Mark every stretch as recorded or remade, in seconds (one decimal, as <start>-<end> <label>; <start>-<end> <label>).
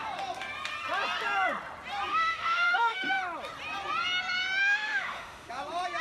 0.0-2.1 recorded; 2.1-3.2 remade; 3.2-4.6 recorded; 4.6-5.5 remade; 5.5-6.0 recorded